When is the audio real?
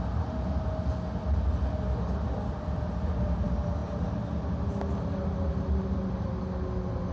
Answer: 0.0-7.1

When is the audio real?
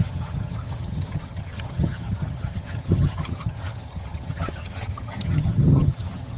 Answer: none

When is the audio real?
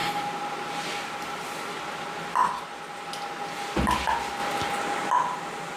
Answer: 3.2-5.8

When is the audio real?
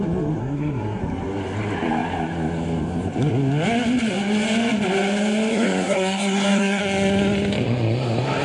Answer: 0.0-0.4; 1.0-5.5; 6.8-8.4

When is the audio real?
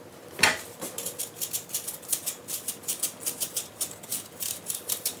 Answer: 0.0-5.2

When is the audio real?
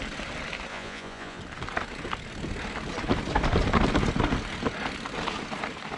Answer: 0.0-0.7; 1.4-6.0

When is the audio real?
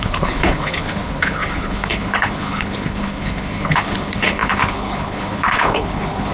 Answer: none